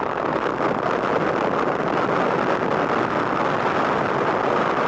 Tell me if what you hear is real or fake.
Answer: real